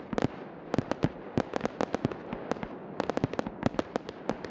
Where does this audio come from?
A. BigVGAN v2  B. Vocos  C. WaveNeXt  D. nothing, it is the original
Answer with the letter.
D